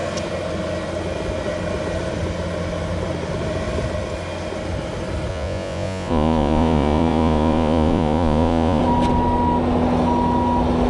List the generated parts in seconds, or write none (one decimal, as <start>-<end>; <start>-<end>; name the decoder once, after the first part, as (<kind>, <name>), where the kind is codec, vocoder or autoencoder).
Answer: 5.3-8.8 (vocoder, Vocos)